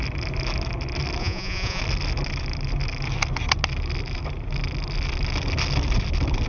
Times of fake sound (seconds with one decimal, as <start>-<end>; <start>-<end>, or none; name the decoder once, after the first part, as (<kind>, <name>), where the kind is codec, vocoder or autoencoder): 1.2-1.8 (vocoder, Vocos)